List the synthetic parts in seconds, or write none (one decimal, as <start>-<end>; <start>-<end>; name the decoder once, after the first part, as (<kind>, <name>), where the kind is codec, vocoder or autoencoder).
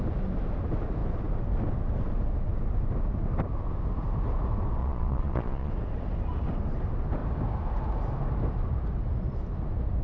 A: 4.8-5.7 (vocoder, Vocos)